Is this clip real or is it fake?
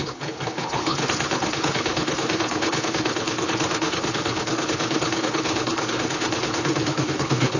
fake